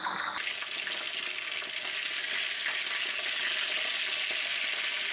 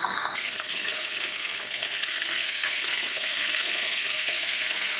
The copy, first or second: second